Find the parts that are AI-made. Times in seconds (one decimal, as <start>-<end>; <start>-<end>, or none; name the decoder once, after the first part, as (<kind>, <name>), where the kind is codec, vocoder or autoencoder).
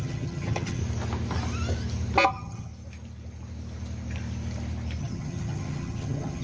0.0-0.8 (vocoder, HiFi-GAN); 2.3-2.7; 5.0-6.4